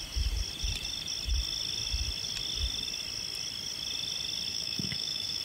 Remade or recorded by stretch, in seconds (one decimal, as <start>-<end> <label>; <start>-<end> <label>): 0.0-4.5 recorded; 4.5-5.4 remade